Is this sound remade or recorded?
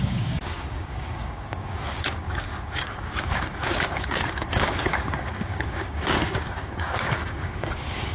remade